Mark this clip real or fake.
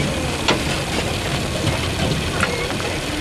real